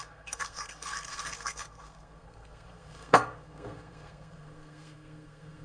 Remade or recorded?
remade